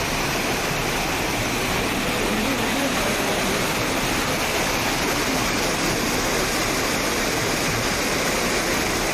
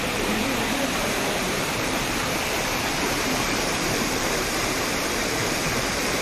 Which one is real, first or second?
first